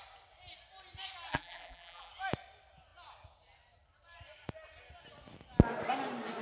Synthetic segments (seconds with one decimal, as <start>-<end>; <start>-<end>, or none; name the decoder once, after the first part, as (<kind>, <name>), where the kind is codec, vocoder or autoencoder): 1.3-2.1 (vocoder, BigVGAN v2)